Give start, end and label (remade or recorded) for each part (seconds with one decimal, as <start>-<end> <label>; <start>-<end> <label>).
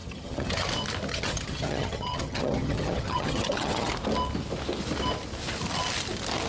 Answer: 0.0-0.7 remade; 0.7-1.1 recorded; 1.1-3.9 remade; 3.9-6.5 recorded